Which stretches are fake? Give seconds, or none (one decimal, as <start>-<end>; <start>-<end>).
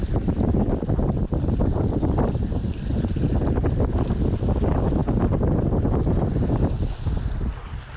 none